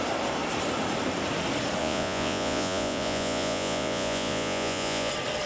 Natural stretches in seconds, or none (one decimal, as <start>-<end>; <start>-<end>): 0.0-1.8; 5.1-5.5